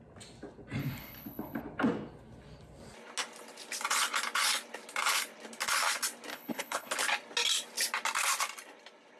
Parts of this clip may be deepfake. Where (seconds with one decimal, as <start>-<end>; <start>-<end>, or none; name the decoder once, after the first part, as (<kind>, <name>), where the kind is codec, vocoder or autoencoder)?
0.8-1.6 (codec, HILCodec); 6.3-6.9